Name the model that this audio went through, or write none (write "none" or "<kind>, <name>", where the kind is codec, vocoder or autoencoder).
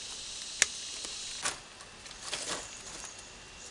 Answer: none